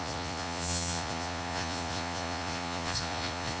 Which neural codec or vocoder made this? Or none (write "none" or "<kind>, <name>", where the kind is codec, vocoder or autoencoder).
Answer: vocoder, Vocos